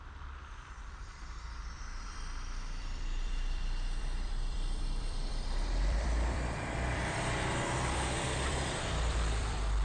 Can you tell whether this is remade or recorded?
remade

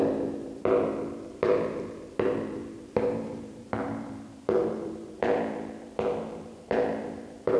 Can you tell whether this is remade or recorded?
remade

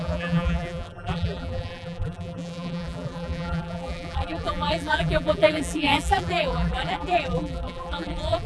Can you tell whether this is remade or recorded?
remade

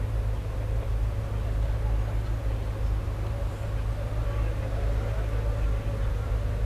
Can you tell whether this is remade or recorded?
recorded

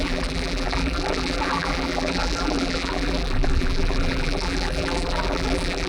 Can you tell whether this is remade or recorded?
remade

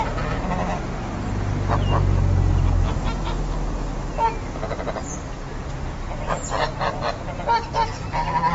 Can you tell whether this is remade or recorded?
recorded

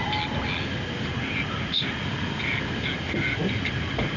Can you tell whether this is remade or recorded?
recorded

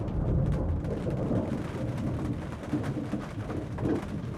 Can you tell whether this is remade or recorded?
remade